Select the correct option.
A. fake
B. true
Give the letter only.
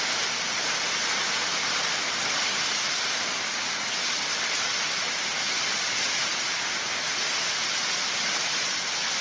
B